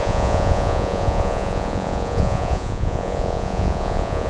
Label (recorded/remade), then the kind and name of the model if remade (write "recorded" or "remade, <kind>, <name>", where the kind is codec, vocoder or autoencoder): remade, vocoder, Vocos